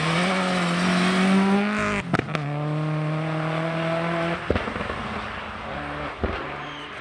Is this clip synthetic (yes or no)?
no